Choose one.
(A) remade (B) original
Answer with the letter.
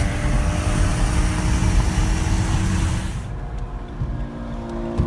B